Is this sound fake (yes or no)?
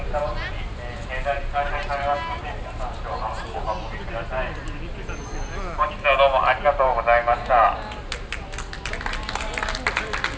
no